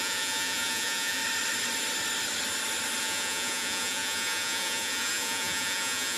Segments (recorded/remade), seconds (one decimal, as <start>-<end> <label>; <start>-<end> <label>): 0.0-1.2 remade; 1.2-3.0 recorded; 3.0-6.2 remade